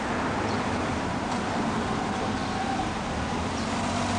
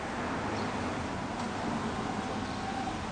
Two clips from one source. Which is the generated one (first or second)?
first